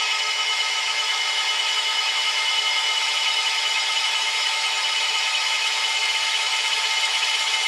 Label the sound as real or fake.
fake